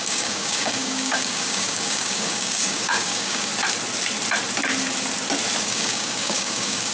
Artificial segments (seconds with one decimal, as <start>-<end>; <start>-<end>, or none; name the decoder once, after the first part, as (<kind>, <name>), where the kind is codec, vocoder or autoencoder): 0.0-3.5 (codec, DAC); 5.6-6.9